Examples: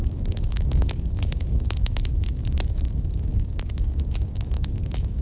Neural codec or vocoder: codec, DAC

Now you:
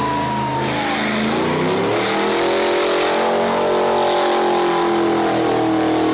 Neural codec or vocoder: none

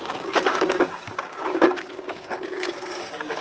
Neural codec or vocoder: codec, DAC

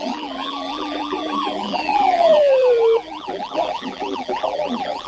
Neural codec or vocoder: vocoder, BigVGAN v2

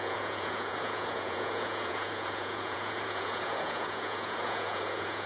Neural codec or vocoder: vocoder, Vocos